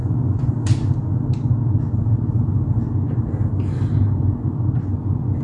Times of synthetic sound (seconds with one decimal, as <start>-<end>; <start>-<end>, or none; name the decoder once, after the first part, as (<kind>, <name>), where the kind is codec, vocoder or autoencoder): 0.0-0.5 (vocoder, Vocos)